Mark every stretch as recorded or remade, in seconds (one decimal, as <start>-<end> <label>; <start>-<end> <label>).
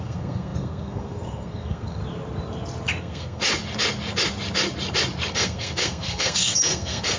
0.0-2.0 remade; 2.0-3.0 recorded; 3.0-3.4 remade; 3.4-5.3 recorded; 5.3-7.2 remade